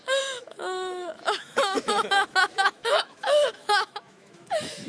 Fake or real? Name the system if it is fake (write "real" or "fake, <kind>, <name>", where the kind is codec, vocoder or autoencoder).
fake, autoencoder, DAC-VAE